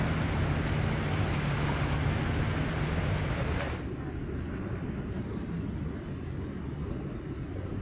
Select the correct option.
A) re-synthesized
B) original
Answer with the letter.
B